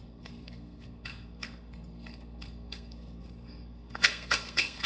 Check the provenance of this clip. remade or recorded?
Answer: remade